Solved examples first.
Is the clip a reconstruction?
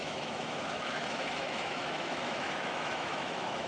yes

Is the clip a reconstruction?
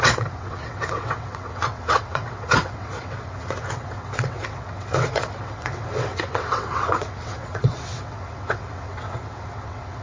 yes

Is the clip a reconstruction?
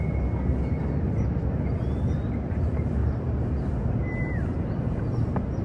no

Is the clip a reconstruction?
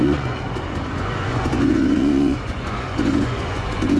yes